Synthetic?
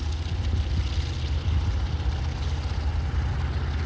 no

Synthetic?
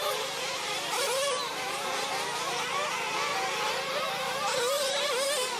yes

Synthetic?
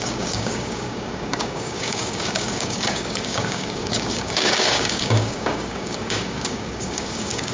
yes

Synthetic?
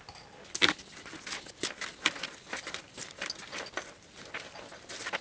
no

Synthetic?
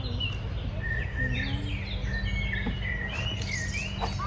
no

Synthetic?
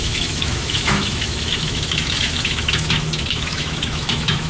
yes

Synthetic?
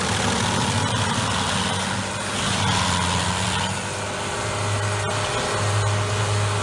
no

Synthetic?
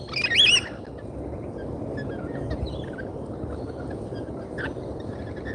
no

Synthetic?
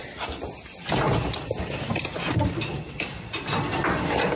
no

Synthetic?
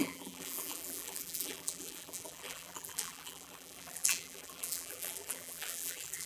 yes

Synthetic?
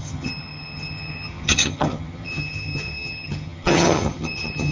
yes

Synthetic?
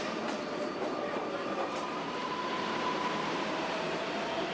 yes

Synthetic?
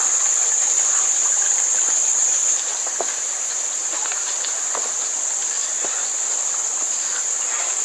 yes